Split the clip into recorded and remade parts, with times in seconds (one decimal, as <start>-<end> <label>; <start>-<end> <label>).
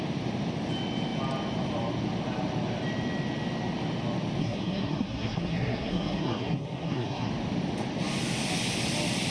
0.0-4.4 recorded; 4.4-7.3 remade; 7.3-9.3 recorded